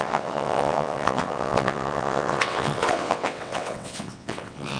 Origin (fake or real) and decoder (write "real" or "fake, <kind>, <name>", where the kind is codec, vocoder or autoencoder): fake, vocoder, WaveNeXt